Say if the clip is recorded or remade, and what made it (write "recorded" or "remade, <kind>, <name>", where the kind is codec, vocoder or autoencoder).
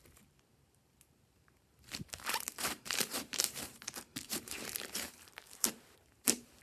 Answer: remade, vocoder, BigVGAN v2